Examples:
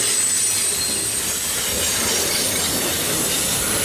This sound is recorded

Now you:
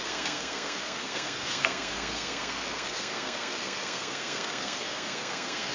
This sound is remade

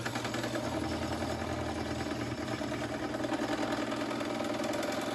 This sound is recorded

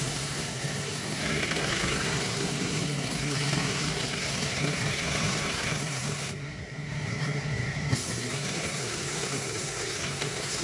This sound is remade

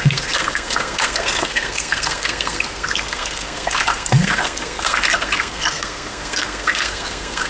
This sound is remade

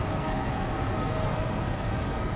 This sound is remade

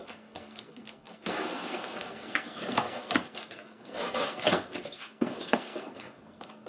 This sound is remade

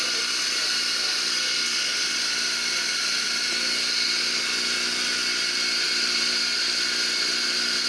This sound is recorded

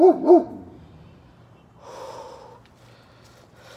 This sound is recorded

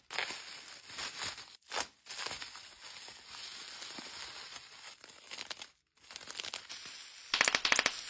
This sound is recorded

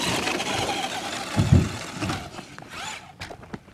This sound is recorded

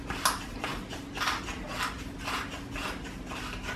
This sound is recorded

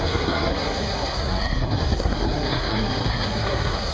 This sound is remade